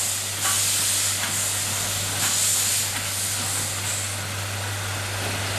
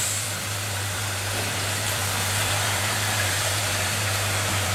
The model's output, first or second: second